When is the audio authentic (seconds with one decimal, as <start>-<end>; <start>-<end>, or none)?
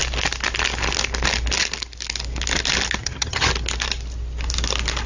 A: 0.0-3.0; 3.5-5.1